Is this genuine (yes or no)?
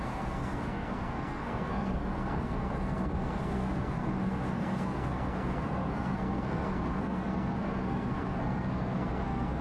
no